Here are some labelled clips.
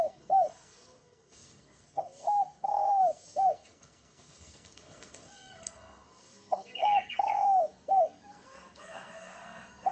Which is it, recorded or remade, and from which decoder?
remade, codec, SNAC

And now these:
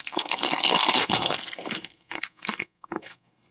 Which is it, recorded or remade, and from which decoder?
remade, codec, SNAC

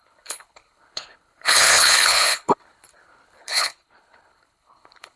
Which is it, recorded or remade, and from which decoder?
remade, codec, HILCodec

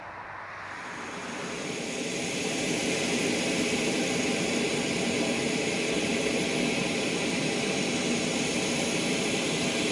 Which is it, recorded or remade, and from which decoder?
recorded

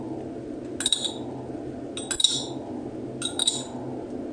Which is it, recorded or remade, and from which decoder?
recorded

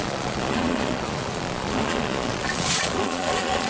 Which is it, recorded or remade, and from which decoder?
remade, vocoder, Vocos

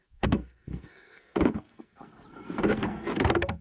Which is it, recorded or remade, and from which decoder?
remade, codec, SNAC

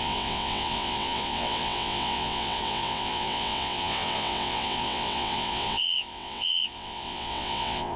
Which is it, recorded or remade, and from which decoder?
remade, vocoder, WaveNeXt